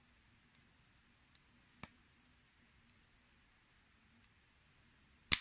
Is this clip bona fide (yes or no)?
yes